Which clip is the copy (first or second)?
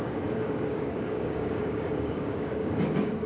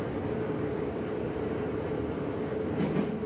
first